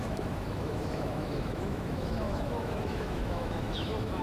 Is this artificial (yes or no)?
yes